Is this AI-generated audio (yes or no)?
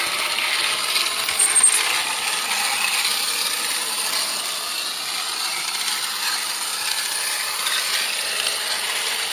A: no